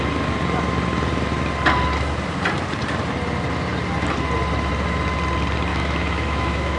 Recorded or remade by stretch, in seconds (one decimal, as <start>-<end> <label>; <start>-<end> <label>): 0.0-5.7 recorded; 5.7-6.8 remade